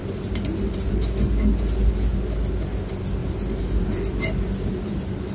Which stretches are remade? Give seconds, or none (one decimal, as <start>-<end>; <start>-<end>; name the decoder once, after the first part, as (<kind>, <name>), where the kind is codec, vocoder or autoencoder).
none